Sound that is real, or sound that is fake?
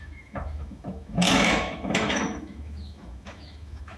fake